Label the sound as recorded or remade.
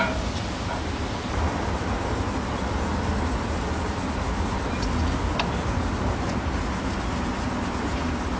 recorded